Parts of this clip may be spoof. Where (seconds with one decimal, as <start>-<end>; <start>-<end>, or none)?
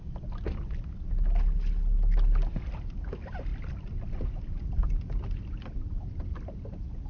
none